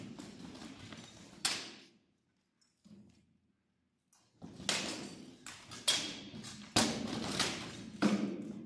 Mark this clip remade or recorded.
recorded